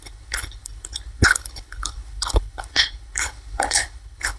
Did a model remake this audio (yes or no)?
yes